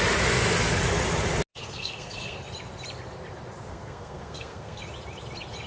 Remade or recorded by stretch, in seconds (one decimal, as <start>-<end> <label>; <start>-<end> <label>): 0.0-1.5 recorded; 1.5-2.4 remade; 2.4-3.7 recorded; 3.7-4.8 remade; 4.8-5.7 recorded